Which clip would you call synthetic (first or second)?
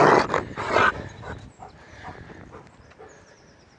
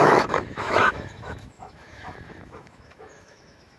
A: second